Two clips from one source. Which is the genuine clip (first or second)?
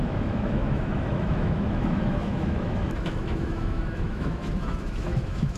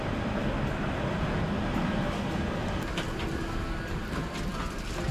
second